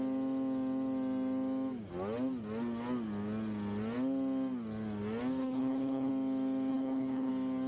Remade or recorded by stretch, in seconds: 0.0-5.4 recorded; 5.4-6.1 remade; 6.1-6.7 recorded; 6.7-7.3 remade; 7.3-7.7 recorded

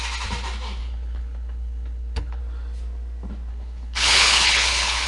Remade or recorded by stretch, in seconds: 0.0-0.8 recorded; 0.8-2.4 remade; 2.4-3.5 recorded; 3.5-5.1 remade

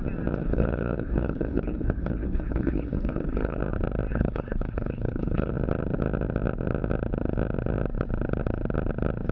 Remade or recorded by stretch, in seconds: 0.0-0.4 recorded; 0.4-3.6 remade; 3.6-4.1 recorded; 4.1-5.5 remade; 5.5-9.3 recorded

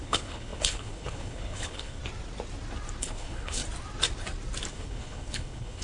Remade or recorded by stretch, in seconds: 0.0-2.0 remade; 2.0-3.0 recorded; 3.0-3.6 remade; 3.6-4.7 recorded; 4.7-5.8 remade

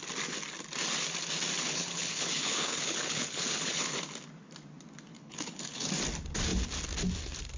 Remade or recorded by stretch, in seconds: 0.0-1.6 recorded; 1.6-3.8 remade; 3.8-5.1 recorded; 5.1-5.9 remade; 5.9-7.6 recorded